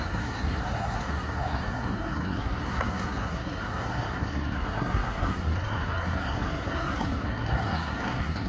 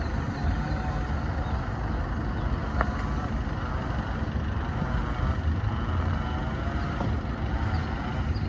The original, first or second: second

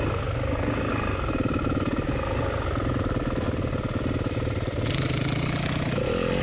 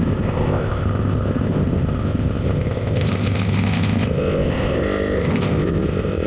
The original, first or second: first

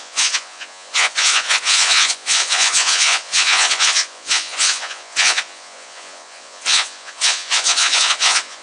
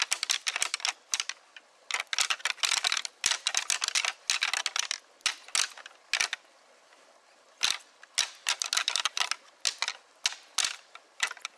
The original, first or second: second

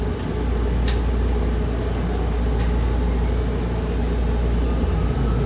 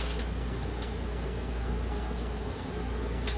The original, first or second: first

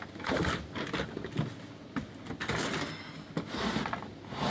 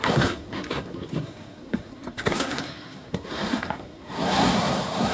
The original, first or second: first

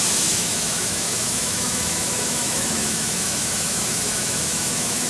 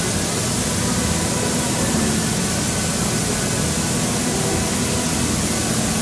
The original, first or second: second